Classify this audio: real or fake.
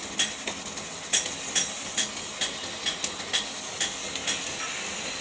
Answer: real